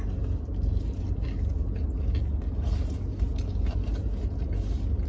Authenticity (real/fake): real